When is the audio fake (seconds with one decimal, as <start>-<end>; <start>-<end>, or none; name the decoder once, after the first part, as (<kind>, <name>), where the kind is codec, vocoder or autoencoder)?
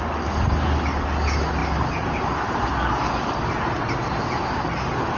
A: none